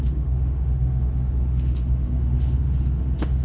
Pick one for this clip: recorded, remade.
remade